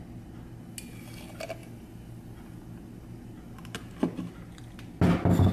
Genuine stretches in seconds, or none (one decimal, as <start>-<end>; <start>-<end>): 0.0-5.5